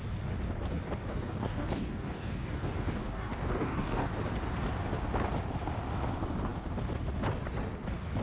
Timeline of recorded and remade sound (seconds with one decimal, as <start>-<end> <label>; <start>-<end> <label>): 0.0-1.1 recorded; 1.1-4.1 remade; 4.1-8.2 recorded